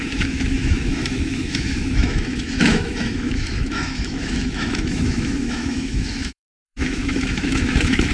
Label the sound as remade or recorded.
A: remade